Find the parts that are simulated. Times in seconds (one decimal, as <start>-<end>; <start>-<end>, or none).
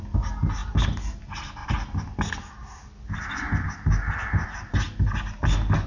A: none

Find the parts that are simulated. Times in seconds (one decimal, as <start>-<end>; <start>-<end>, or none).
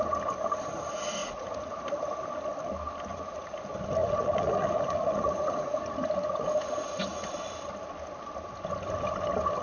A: 1.2-1.8; 3.1-3.6; 4.0-7.0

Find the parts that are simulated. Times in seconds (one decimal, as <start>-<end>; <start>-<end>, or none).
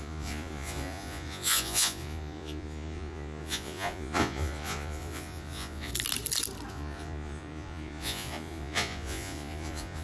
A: 0.0-5.9; 6.7-10.0